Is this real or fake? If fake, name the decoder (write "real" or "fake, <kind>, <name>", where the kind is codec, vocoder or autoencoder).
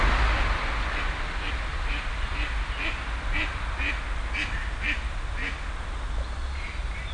real